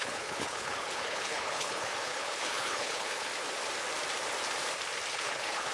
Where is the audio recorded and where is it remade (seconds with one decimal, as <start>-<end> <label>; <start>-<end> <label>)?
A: 0.0-3.3 remade; 3.3-5.1 recorded; 5.1-5.7 remade